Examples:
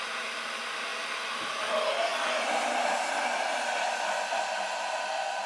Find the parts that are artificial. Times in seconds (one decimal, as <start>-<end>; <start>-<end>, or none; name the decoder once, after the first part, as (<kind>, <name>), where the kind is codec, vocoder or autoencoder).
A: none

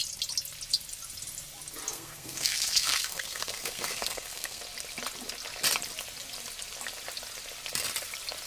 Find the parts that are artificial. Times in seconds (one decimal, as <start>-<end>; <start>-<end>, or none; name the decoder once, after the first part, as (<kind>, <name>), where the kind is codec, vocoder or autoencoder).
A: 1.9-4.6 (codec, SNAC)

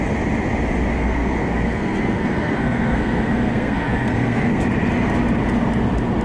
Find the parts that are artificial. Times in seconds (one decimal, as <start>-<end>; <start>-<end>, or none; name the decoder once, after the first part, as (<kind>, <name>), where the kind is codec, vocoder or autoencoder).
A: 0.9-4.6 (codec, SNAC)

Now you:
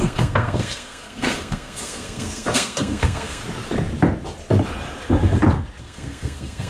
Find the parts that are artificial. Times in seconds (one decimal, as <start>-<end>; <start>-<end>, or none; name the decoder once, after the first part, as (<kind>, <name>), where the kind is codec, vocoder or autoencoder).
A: 0.0-3.4 (codec, SNAC); 5.8-6.7

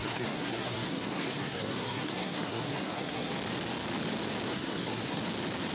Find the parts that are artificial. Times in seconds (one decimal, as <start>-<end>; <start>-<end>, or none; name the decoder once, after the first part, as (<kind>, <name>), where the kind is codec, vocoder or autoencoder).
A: 0.0-3.3 (codec, SNAC); 4.5-5.2

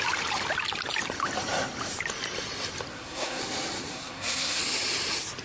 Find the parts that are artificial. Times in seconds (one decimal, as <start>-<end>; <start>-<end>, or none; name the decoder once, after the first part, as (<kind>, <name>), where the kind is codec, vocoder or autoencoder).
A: 2.9-3.4 (codec, SNAC); 3.9-4.6